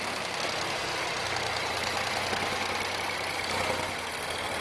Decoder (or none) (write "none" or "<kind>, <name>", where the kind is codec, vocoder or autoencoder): none